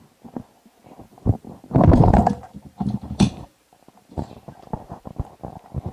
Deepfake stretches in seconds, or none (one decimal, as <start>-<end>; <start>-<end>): 1.1-4.3

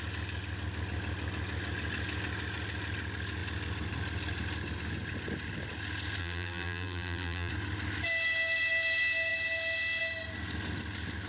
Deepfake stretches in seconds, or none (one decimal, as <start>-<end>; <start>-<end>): 6.2-7.5

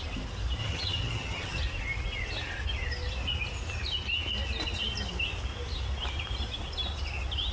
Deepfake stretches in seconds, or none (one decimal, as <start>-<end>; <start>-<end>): 0.6-1.6

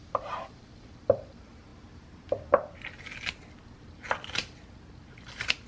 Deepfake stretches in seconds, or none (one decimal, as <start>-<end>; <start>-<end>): 0.0-1.7; 5.1-5.7

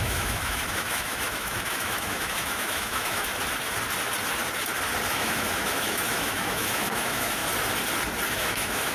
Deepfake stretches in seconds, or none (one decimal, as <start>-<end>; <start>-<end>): 0.0-3.3; 5.1-7.4; 8.3-8.9

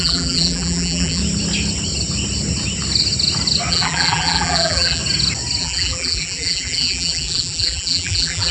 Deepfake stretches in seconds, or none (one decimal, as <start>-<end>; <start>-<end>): 0.0-1.2; 3.7-5.0; 5.6-8.5

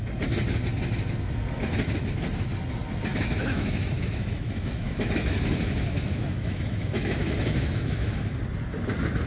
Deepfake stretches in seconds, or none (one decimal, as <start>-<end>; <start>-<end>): 3.1-8.3